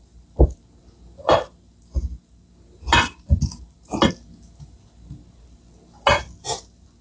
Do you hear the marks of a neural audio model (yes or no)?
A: no